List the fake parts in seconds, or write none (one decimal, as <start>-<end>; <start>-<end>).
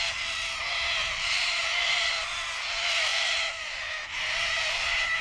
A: 1.0-2.1; 3.1-3.9